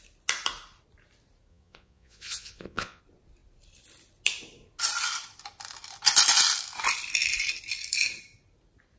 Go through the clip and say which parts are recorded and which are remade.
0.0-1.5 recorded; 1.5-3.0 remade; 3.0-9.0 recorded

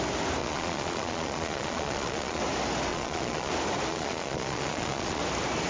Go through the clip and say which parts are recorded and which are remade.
0.0-0.4 recorded; 0.4-2.4 remade; 2.4-2.9 recorded; 2.9-3.5 remade; 3.5-3.9 recorded; 3.9-5.2 remade; 5.2-5.7 recorded

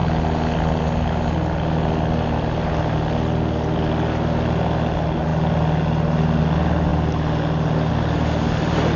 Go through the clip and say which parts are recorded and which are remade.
0.0-9.0 recorded

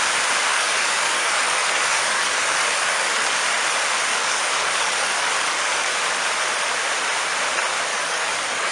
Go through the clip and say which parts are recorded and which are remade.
0.0-0.5 recorded; 0.5-3.4 remade; 3.4-4.1 recorded; 4.1-5.9 remade; 5.9-7.9 recorded; 7.9-8.7 remade

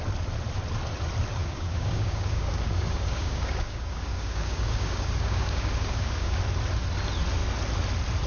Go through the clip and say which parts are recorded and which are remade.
0.0-1.4 recorded; 1.4-6.4 remade; 6.4-8.3 recorded

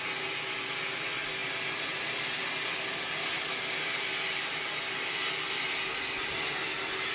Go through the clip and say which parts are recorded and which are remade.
0.0-7.1 recorded

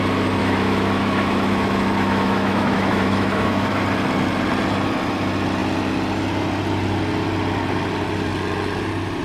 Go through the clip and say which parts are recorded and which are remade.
0.0-0.4 recorded; 0.4-3.8 remade; 3.8-9.2 recorded

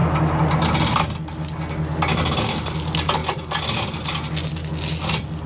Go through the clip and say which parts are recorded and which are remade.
0.0-5.5 recorded